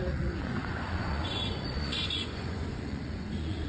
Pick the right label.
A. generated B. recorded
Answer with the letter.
A